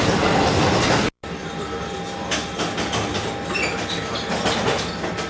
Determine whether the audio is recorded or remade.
recorded